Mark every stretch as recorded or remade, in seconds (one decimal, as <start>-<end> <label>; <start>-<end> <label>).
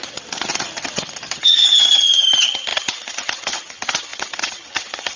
0.0-5.2 remade